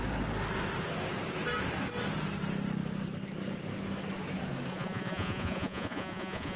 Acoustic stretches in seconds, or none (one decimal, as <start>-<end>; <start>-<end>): 0.0-4.7